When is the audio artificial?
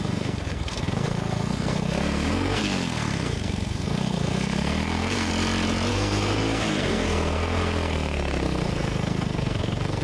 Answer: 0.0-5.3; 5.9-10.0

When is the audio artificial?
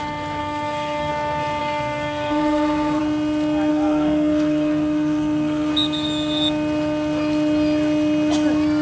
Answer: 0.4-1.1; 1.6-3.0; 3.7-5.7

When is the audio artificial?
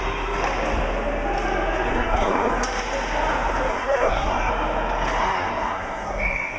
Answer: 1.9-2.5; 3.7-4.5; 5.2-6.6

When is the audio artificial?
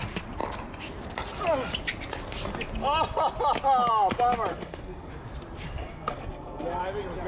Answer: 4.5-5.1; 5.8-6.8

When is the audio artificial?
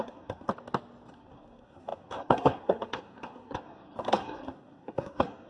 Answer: 0.0-0.5; 1.1-5.5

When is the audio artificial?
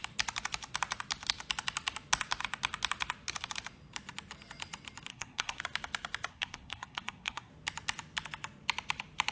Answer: 5.1-5.6; 6.3-7.5